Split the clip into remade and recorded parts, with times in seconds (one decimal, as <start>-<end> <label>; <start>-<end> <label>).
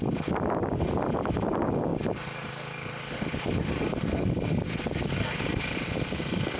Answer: 0.0-6.6 recorded